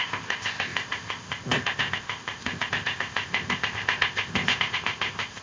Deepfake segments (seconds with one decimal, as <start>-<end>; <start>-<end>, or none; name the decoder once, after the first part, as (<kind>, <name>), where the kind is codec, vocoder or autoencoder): 0.0-5.4 (codec, ZipCodec)